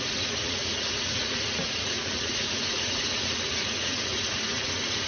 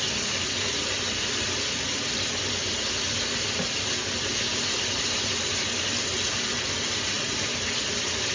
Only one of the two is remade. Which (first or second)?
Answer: first